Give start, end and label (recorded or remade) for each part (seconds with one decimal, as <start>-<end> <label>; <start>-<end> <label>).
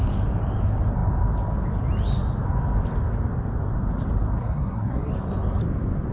0.0-4.4 recorded; 4.4-5.1 remade; 5.1-6.1 recorded